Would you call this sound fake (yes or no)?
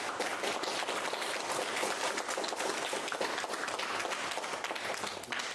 no